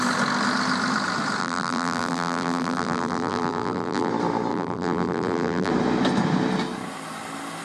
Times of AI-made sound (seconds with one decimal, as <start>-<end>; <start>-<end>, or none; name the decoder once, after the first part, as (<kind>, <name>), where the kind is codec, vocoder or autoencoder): 1.4-4.1 (vocoder, BigVGAN v2); 4.5-5.7